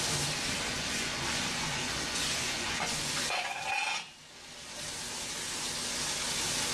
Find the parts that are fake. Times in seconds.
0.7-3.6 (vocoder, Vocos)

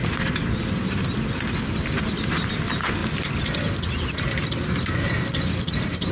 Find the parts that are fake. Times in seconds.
none

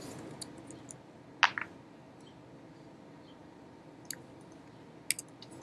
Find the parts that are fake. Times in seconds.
none

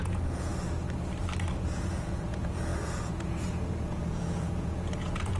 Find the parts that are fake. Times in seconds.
0.0-0.5 (vocoder, Vocos); 1.6-5.4